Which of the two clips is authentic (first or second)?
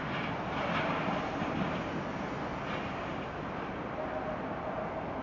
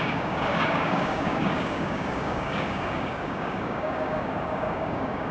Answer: first